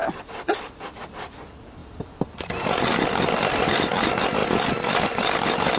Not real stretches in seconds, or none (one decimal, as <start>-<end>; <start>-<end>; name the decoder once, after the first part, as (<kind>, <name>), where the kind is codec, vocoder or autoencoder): none